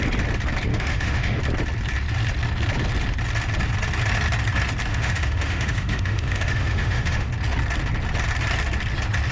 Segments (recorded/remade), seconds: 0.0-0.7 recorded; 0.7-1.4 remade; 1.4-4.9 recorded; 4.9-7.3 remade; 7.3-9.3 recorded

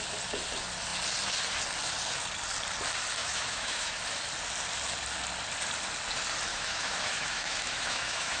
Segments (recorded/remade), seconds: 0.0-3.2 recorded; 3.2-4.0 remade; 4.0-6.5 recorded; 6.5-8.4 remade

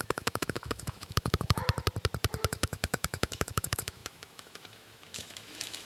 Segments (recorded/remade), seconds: 0.0-1.6 remade; 1.6-2.5 recorded; 2.5-5.8 remade

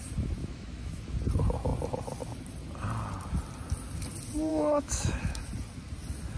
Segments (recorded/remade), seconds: 0.0-0.4 recorded; 0.4-1.0 remade; 1.0-4.5 recorded; 4.5-5.4 remade; 5.4-6.4 recorded

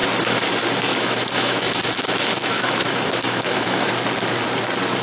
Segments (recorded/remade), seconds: 0.0-0.9 recorded; 0.9-3.9 remade; 3.9-5.0 recorded